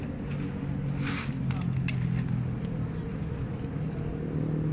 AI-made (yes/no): no